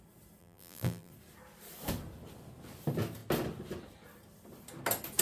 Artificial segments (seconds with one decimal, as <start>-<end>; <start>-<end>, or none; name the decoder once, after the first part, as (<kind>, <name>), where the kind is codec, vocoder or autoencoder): 0.4-1.1 (vocoder, BigVGAN v2)